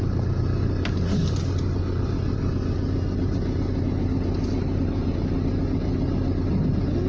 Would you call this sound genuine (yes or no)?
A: yes